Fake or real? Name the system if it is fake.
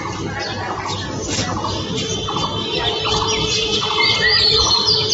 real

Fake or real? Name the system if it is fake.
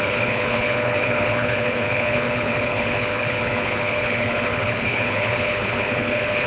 fake, codec, HILCodec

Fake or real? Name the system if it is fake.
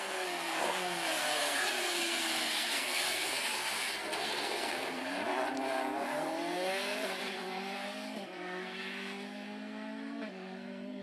fake, codec, SNAC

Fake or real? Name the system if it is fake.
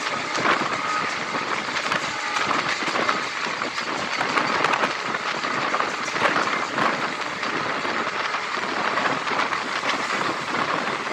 real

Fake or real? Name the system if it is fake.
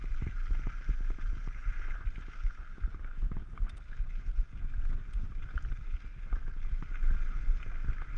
real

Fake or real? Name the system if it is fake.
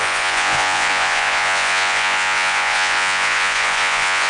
fake, vocoder, Vocos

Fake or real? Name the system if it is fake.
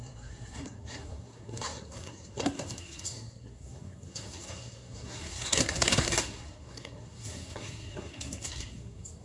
fake, codec, SNAC